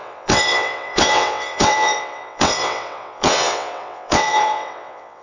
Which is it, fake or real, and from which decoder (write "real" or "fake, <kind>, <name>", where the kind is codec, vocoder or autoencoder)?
fake, vocoder, WaveNeXt